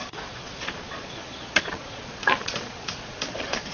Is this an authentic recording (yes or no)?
no